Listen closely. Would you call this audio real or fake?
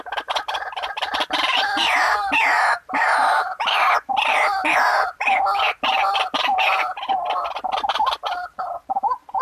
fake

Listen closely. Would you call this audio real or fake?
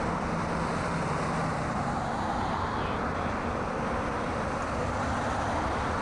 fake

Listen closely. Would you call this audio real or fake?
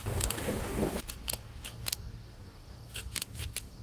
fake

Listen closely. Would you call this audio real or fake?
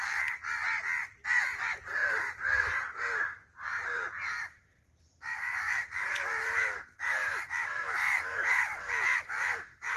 fake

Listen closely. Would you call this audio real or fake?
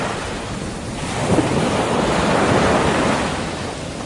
real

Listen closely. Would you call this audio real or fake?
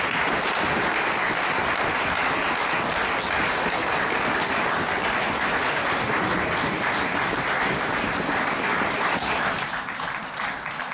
real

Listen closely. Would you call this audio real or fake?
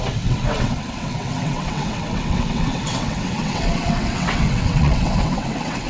fake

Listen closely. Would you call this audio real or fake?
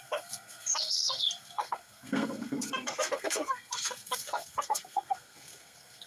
fake